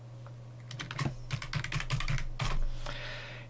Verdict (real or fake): real